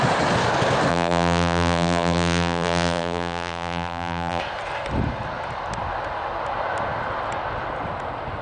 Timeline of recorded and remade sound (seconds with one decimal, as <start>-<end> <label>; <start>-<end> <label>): 0.0-0.9 recorded; 0.9-4.4 remade; 4.4-8.4 recorded